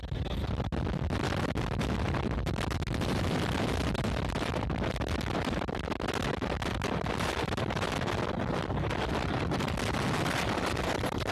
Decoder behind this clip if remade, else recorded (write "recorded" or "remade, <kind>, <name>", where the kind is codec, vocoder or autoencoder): recorded